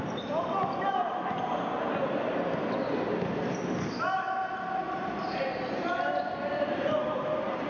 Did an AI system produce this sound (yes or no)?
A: no